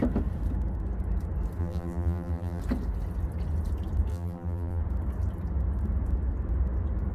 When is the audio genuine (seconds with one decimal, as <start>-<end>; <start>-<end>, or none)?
0.0-1.6; 2.6-4.1; 4.8-7.1